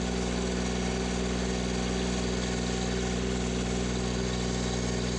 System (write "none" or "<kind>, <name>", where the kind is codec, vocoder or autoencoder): none